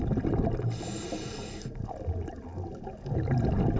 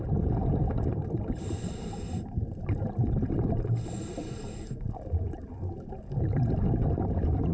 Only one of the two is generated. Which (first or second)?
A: second